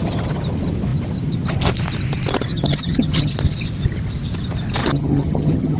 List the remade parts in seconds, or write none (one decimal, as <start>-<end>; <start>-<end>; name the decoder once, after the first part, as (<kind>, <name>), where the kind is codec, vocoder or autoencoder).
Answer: 2.5-3.3 (vocoder, HiFi-GAN); 4.8-5.8

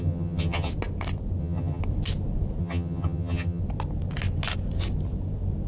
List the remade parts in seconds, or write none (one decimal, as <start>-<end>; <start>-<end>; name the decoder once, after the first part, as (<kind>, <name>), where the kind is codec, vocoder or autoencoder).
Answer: 0.0-0.7 (vocoder, HiFi-GAN); 1.4-1.8; 2.6-3.6

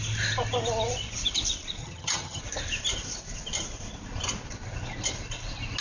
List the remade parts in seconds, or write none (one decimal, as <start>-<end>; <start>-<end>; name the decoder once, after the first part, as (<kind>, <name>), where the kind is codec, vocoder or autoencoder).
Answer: 1.8-2.4 (vocoder, HiFi-GAN)

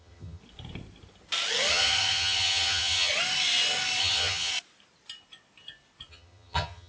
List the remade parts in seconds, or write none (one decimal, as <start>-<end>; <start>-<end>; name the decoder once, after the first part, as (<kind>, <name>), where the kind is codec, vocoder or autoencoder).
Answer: 0.0-0.4 (vocoder, HiFi-GAN); 1.7-3.1; 4.0-4.5; 6.1-6.9